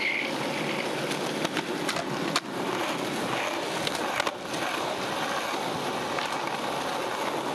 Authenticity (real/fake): real